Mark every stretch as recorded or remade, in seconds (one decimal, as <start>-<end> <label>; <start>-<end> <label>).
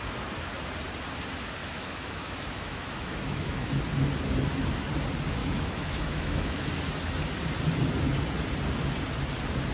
0.0-1.6 recorded; 1.6-3.8 remade; 3.8-5.4 recorded; 5.4-6.7 remade; 6.7-9.7 recorded